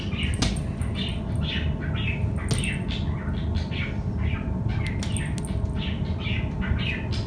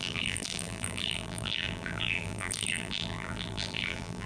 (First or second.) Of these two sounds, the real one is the first